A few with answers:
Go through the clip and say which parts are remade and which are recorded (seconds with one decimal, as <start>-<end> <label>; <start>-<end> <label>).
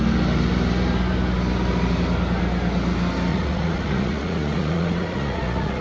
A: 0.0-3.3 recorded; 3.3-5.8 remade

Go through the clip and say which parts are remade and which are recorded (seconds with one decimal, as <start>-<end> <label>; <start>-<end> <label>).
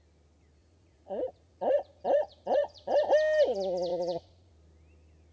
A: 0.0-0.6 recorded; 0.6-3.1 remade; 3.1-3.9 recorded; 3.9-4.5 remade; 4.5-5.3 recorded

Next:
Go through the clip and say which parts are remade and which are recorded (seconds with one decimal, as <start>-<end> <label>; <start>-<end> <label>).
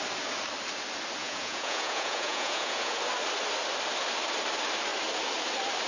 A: 0.0-1.2 recorded; 1.2-3.0 remade; 3.0-5.9 recorded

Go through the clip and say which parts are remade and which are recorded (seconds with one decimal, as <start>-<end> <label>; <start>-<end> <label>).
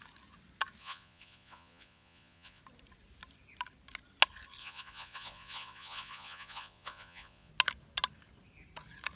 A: 0.0-0.8 recorded; 0.8-2.6 remade; 2.6-4.6 recorded; 4.6-7.5 remade; 7.5-9.2 recorded